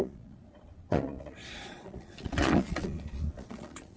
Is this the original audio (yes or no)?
no